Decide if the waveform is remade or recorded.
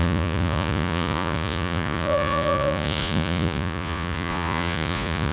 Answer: remade